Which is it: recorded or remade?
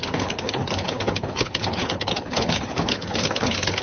remade